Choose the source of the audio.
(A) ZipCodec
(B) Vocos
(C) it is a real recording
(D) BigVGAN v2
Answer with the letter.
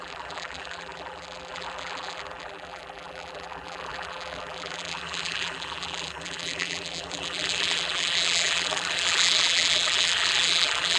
D